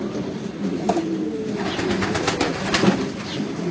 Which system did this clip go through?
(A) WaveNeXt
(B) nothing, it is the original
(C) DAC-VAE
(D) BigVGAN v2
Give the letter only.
D